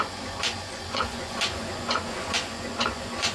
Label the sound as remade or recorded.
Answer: remade